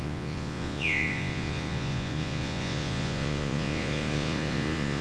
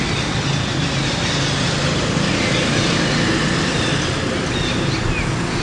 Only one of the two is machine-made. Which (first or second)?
first